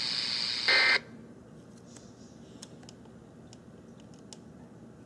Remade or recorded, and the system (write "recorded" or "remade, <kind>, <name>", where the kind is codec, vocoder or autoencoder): recorded